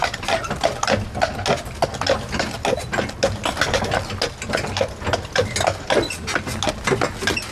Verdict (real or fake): real